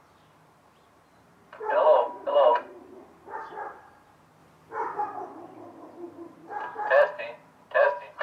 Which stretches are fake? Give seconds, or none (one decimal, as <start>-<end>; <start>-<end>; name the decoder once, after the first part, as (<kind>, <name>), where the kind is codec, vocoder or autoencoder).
0.0-4.4 (vocoder, BigVGAN v2); 5.0-8.2